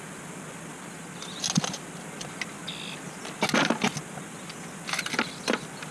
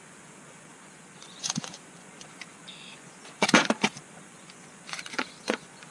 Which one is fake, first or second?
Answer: second